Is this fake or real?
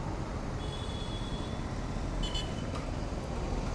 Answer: real